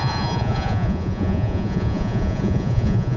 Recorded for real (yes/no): no